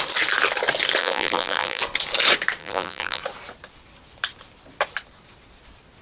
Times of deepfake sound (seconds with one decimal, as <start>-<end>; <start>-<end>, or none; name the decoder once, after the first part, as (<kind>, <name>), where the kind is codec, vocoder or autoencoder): 1.0-1.8 (vocoder, BigVGAN v2); 2.6-3.2